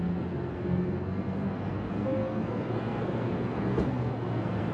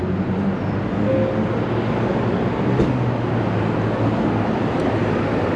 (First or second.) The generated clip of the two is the first